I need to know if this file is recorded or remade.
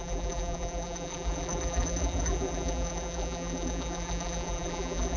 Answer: remade